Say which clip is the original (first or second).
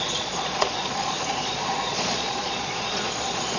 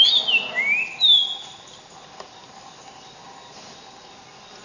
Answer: second